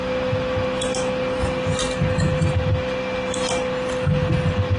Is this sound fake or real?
real